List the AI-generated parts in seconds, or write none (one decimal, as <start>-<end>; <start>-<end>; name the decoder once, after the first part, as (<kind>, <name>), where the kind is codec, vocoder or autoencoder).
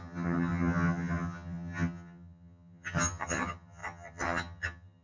0.0-5.0 (vocoder, HiFi-GAN)